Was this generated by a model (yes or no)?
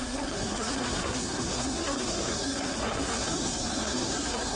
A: yes